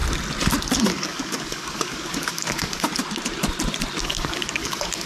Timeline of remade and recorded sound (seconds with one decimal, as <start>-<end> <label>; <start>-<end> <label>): 0.0-0.8 recorded; 0.8-2.9 remade; 2.9-4.0 recorded; 4.0-5.1 remade